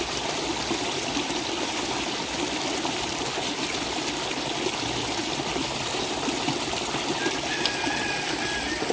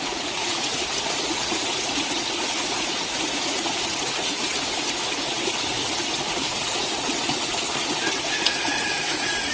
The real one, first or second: first